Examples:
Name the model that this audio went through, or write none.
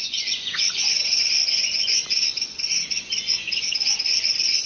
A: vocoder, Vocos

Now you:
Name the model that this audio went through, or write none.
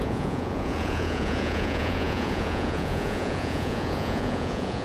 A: vocoder, Vocos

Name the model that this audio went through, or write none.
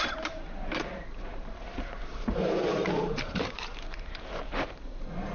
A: vocoder, BigVGAN v2